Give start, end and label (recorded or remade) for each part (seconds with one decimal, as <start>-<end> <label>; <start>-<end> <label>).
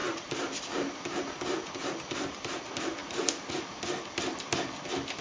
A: 0.0-1.2 remade; 1.2-1.8 recorded; 1.8-2.6 remade; 2.6-3.0 recorded; 3.0-3.5 remade; 3.5-5.2 recorded